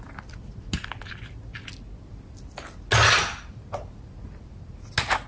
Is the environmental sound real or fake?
real